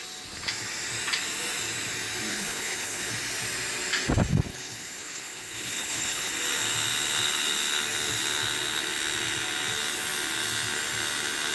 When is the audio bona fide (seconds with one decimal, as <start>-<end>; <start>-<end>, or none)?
0.0-2.3; 3.1-4.5; 6.3-11.5